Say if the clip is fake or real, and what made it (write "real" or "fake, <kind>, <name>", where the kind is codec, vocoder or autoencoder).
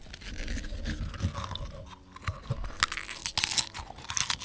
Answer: real